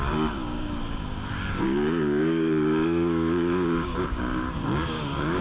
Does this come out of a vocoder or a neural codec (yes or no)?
yes